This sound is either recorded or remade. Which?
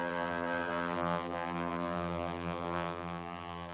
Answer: remade